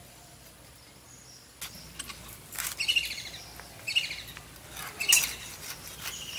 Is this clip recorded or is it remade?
recorded